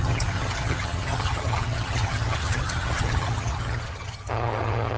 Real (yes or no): no